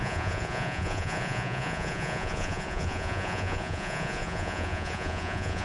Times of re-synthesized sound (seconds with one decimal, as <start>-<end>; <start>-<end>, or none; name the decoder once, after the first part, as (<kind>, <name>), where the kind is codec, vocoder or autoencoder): 0.0-5.6 (vocoder, Vocos)